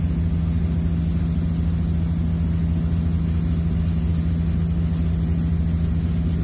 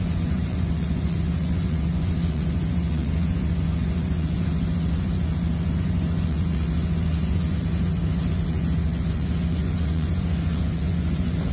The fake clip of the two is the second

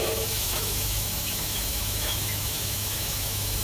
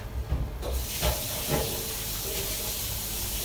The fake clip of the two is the first